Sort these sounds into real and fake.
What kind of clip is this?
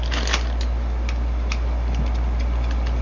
real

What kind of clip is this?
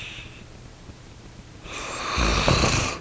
fake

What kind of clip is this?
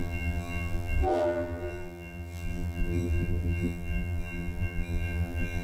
fake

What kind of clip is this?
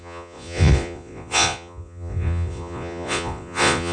fake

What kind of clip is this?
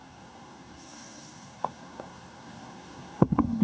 fake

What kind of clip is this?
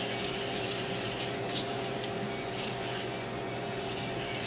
fake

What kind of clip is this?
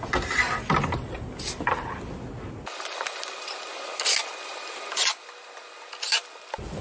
real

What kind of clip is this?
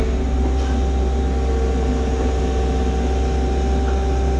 real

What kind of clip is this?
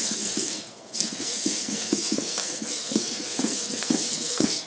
fake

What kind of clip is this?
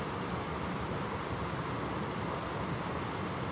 real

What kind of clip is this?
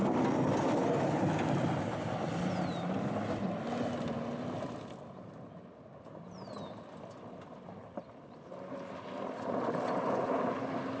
real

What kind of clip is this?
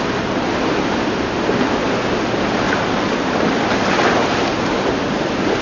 real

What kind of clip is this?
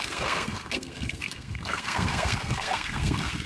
fake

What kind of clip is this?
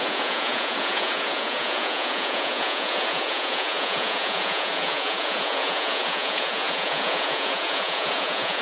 fake